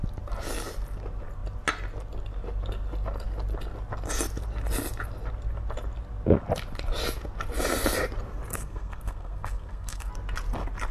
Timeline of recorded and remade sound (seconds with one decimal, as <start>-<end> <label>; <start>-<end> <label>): 0.0-8.5 recorded; 8.5-10.1 remade; 10.1-10.9 recorded